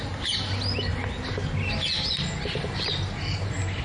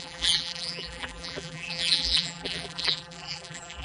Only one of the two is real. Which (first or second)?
first